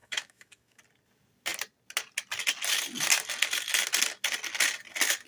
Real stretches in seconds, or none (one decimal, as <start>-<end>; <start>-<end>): 0.8-5.3